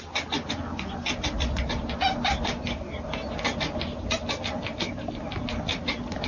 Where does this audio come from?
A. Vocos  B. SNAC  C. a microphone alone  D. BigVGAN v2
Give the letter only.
C